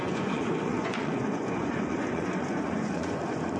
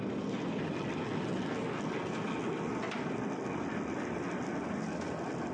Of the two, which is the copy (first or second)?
first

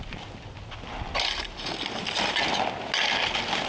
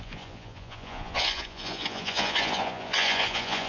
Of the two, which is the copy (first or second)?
second